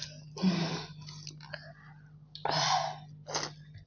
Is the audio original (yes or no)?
yes